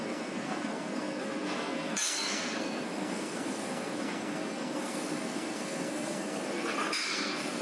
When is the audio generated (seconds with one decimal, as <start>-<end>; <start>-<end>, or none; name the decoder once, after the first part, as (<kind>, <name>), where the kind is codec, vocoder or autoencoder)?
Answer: 0.0-7.6 (codec, SNAC)